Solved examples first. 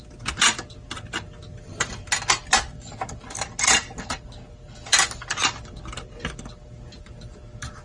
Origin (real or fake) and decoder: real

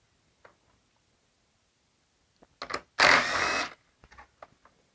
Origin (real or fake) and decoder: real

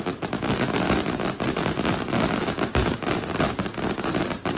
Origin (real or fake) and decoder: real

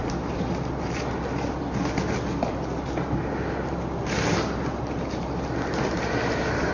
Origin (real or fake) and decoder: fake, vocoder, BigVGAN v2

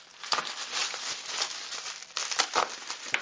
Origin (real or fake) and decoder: real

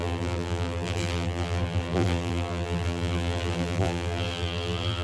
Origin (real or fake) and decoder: fake, vocoder, BigVGAN v2